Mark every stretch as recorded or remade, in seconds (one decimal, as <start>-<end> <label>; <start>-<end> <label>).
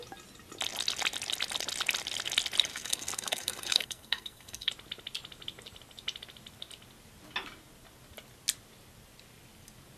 0.0-2.7 recorded; 2.7-4.7 remade; 4.7-10.0 recorded